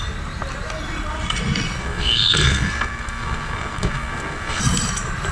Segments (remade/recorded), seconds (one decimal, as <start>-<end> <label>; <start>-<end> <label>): 0.0-1.8 recorded; 1.8-4.6 remade; 4.6-5.3 recorded